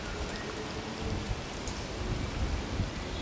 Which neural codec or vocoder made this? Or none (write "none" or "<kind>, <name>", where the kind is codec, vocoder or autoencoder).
none